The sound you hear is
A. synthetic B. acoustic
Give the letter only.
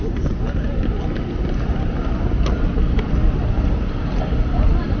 B